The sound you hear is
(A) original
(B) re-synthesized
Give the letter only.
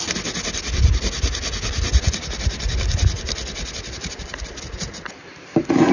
A